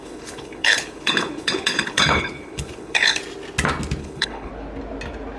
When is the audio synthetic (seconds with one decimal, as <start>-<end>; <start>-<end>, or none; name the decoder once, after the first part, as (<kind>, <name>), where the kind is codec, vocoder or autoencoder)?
0.0-3.2 (codec, HILCodec); 4.0-4.5